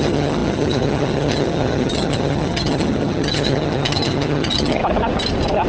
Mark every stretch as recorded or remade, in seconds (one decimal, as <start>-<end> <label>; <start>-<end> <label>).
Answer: 0.0-4.8 remade; 4.8-5.7 recorded